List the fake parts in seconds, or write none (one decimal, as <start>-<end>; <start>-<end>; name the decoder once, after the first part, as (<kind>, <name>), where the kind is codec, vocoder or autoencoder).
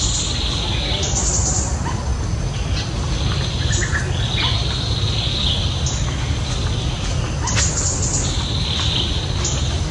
none